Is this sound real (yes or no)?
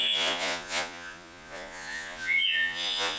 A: no